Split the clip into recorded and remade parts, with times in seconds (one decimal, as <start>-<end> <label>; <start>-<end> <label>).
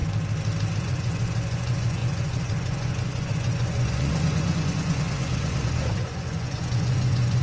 0.0-0.8 recorded; 0.8-7.4 remade